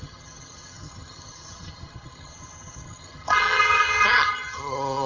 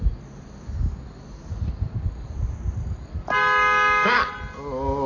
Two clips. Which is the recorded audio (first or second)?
second